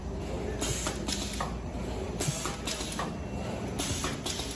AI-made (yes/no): no